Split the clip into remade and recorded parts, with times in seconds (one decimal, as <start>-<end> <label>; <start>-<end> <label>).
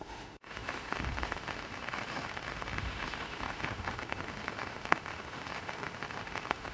0.0-6.7 remade